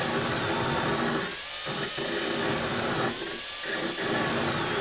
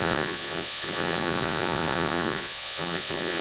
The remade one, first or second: second